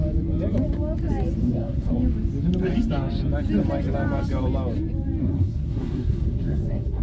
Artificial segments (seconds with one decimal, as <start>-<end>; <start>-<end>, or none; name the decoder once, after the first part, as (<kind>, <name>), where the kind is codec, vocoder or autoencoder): 1.4-1.9 (codec, SNAC); 5.2-7.0